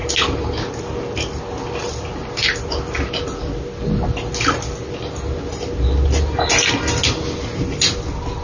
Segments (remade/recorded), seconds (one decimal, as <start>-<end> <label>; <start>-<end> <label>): 0.0-8.4 recorded

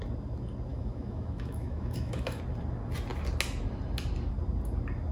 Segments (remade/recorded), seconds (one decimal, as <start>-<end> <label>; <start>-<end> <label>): 0.0-0.7 recorded; 0.7-2.4 remade; 2.4-5.1 recorded

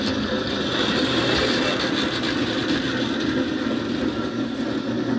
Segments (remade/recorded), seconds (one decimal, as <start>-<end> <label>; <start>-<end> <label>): 0.0-5.2 recorded

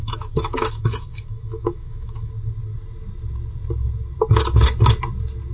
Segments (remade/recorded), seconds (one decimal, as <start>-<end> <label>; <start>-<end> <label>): 0.0-2.3 remade; 2.3-5.5 recorded

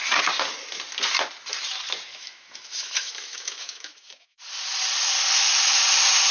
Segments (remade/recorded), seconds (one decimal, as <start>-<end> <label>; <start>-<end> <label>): 0.0-2.1 recorded; 2.1-4.4 remade; 4.4-6.3 recorded

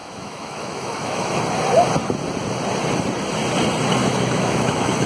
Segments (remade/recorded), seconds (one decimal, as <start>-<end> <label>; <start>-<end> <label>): 0.0-1.4 remade; 1.4-4.0 recorded; 4.0-5.1 remade

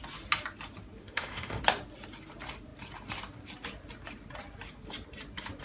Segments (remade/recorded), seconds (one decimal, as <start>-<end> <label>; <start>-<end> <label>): 0.0-1.0 recorded; 1.0-1.6 remade; 1.6-5.6 recorded

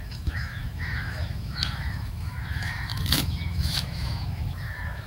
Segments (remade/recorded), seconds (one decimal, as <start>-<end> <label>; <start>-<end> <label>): 0.0-5.1 remade